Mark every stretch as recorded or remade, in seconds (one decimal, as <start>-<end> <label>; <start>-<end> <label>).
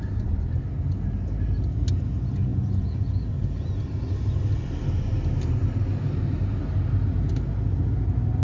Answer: 0.0-2.5 recorded; 2.5-3.1 remade; 3.1-8.4 recorded